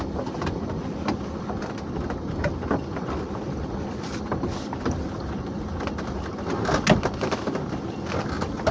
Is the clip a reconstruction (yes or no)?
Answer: no